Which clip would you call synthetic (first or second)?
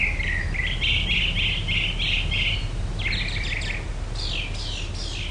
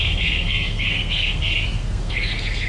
second